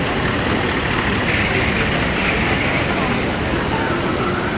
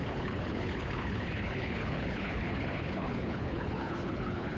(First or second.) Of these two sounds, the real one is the first